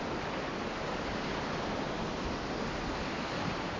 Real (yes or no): yes